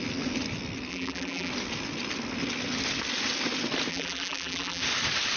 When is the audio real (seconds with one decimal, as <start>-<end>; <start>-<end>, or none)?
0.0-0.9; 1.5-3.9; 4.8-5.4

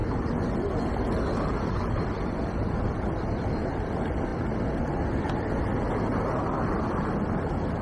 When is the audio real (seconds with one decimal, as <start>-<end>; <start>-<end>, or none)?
0.0-7.8

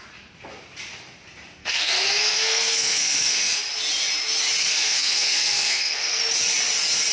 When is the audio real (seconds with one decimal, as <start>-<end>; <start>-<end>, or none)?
0.0-1.6; 3.6-4.6; 6.2-7.1

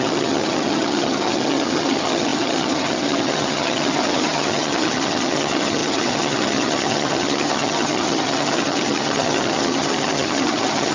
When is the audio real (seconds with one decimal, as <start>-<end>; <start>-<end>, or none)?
none

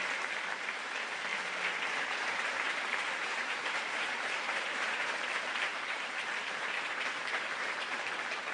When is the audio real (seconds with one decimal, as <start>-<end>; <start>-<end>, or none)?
0.0-1.3; 5.1-5.7; 8.1-8.5

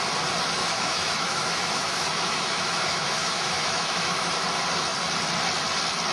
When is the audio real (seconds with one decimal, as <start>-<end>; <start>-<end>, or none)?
0.0-0.6; 4.3-6.1